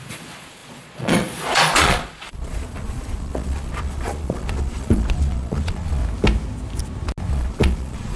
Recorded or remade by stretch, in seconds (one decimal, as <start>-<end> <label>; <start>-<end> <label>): 0.0-6.0 remade; 6.0-7.3 recorded; 7.3-8.2 remade